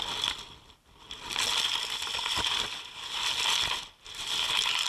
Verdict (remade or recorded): recorded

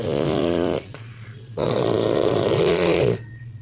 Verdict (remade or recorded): remade